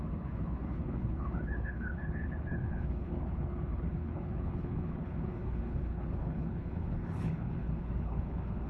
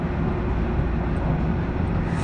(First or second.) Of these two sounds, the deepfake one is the first